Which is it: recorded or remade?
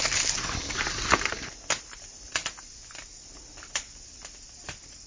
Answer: remade